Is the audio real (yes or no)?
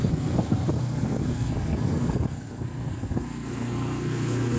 no